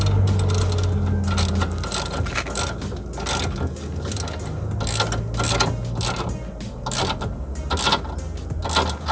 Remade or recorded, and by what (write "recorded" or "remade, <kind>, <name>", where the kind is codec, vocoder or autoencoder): recorded